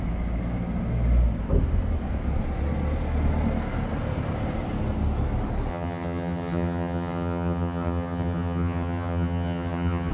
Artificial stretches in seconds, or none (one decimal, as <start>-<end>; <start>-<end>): 5.7-10.1